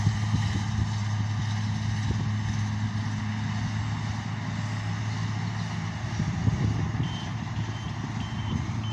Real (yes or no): yes